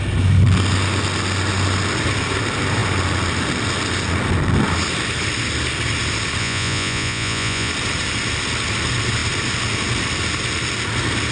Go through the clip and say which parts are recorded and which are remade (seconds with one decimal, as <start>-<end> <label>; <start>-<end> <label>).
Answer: 0.0-6.4 recorded; 6.4-7.7 remade; 7.7-11.3 recorded